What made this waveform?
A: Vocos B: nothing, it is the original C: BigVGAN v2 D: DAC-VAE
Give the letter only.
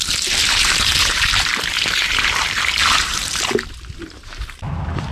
C